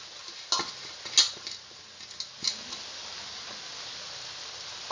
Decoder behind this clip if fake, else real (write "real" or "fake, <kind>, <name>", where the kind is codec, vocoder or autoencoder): real